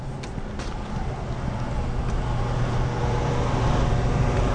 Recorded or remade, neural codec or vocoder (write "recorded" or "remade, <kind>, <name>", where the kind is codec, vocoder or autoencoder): recorded